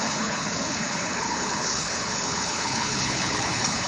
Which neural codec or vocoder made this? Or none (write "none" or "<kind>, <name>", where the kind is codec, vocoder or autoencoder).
codec, HILCodec